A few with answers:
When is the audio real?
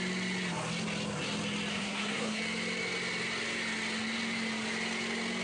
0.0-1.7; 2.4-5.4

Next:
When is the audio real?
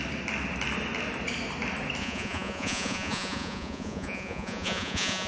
0.0-2.0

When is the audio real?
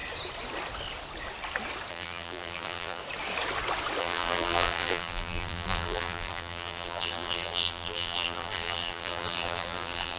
0.0-1.9; 3.0-4.0